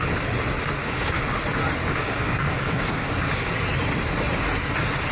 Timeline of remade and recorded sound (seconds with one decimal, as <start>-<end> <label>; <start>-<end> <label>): 0.0-0.8 recorded; 0.8-1.4 remade; 1.4-2.0 recorded; 2.0-3.5 remade; 3.5-5.1 recorded